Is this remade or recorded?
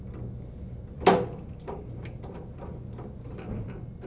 recorded